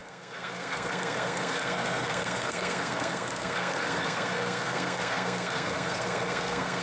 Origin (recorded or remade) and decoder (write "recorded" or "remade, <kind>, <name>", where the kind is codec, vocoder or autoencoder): remade, codec, SNAC